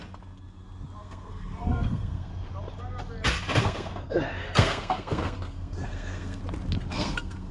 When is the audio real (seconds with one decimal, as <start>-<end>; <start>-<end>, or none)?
0.0-1.0; 2.3-3.6; 6.4-6.9